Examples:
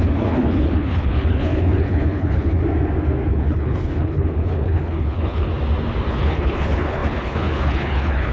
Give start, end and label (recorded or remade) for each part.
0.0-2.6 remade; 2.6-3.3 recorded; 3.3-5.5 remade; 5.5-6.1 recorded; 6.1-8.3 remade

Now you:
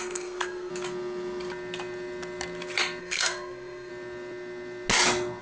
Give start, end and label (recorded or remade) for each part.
0.0-0.7 remade; 0.7-3.0 recorded; 3.0-3.9 remade; 3.9-5.4 recorded

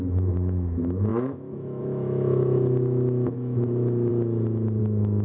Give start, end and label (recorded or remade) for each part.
0.0-4.1 remade; 4.1-4.8 recorded; 4.8-5.2 remade

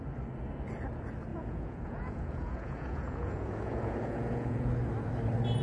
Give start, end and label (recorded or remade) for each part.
0.0-1.3 recorded; 1.3-4.7 remade; 4.7-5.6 recorded

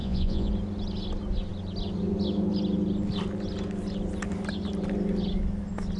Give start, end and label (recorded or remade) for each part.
0.0-0.5 remade; 0.5-6.0 recorded

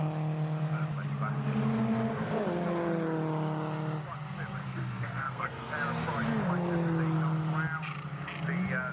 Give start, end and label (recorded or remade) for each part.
0.0-4.6 recorded; 4.6-5.7 remade; 5.7-8.9 recorded

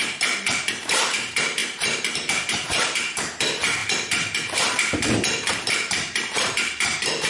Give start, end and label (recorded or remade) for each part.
0.0-7.3 remade